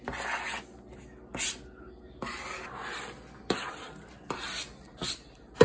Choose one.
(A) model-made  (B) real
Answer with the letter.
B